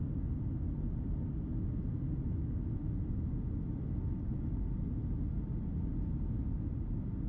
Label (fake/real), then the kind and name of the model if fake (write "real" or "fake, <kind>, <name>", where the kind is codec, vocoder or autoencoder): real